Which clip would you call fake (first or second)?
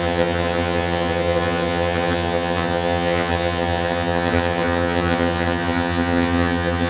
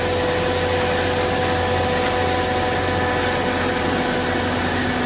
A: first